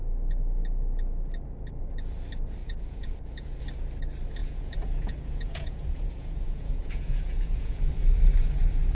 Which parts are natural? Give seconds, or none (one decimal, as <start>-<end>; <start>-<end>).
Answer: 0.0-2.6; 3.6-4.4; 7.9-8.9